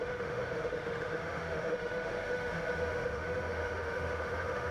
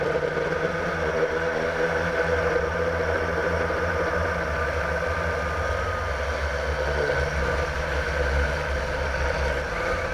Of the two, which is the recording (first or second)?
second